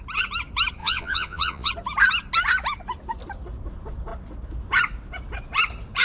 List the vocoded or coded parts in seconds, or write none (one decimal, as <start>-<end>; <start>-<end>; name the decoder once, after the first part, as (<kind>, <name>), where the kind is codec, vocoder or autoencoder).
0.8-1.7 (vocoder, Vocos)